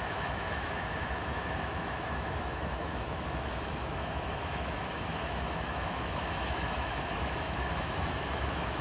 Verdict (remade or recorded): remade